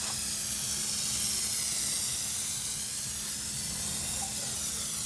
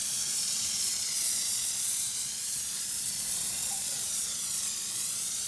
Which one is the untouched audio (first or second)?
first